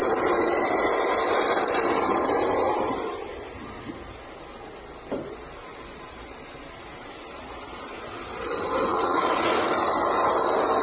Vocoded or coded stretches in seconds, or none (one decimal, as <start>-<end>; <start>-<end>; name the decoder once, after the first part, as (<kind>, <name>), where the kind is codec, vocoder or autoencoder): 8.9-9.7 (vocoder, Vocos)